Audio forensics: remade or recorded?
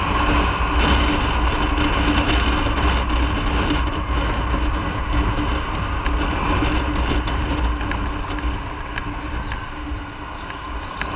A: recorded